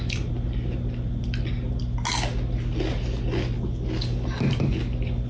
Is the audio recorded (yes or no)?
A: yes